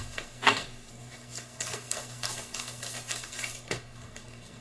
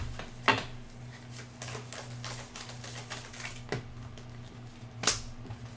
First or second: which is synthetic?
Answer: first